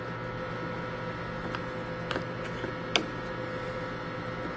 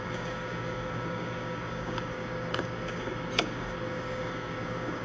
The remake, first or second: second